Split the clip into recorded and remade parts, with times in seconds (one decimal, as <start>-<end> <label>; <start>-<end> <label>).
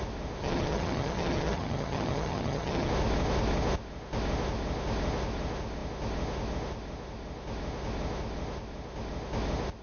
0.0-0.4 recorded; 0.4-2.9 remade; 2.9-9.8 recorded